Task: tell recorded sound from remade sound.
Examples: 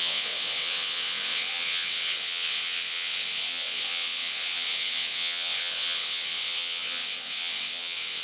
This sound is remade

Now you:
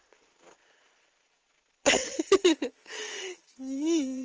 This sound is remade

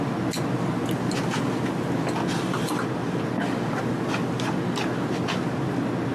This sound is recorded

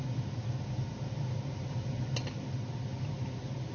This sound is recorded